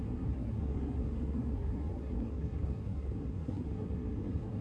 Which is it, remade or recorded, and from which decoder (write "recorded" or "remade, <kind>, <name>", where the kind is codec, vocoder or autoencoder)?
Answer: remade, codec, SNAC